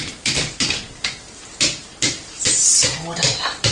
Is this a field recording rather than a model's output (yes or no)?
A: no